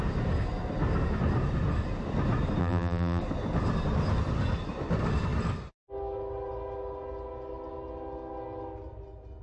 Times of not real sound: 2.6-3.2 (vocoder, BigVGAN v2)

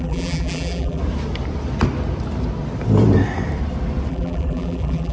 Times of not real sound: 0.0-1.0 (vocoder, BigVGAN v2); 4.1-5.1

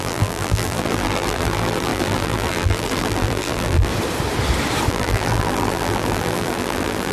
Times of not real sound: 0.0-3.9 (vocoder, BigVGAN v2); 4.9-7.1

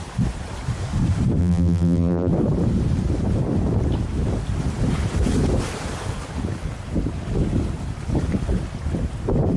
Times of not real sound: 1.4-2.3 (vocoder, BigVGAN v2)

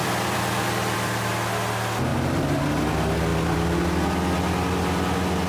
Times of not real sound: 0.0-1.3 (vocoder, BigVGAN v2); 2.1-2.6; 3.3-3.8

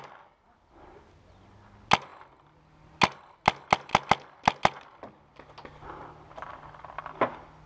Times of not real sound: none

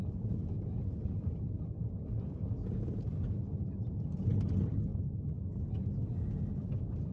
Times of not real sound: none

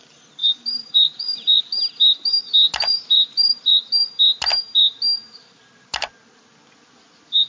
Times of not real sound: 0.4-1.6 (vocoder, BigVGAN v2); 2.9-4.0